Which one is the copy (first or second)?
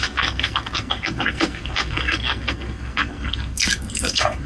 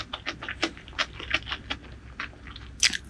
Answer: first